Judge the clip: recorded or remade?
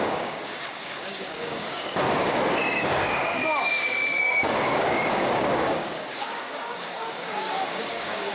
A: remade